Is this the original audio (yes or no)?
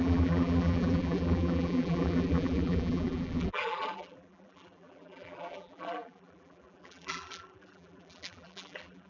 no